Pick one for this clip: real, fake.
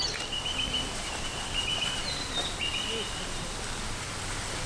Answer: real